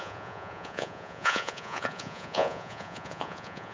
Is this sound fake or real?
fake